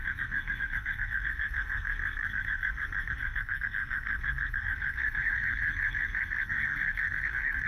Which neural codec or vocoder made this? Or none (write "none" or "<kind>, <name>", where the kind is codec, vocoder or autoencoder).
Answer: codec, SNAC